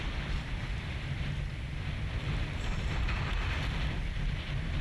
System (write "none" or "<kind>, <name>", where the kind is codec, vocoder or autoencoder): none